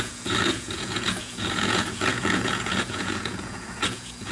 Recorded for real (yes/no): no